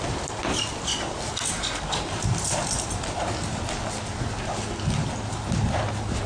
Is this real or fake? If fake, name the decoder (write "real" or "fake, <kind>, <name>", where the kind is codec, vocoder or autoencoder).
real